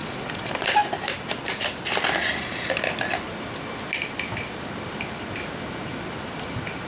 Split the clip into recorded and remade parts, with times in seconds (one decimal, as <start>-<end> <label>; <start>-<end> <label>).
0.0-6.9 recorded